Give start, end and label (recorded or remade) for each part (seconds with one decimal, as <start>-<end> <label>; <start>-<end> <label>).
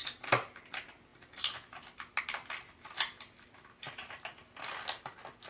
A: 0.0-5.5 recorded